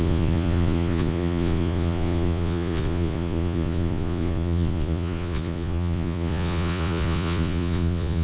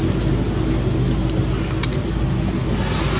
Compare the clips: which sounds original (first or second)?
second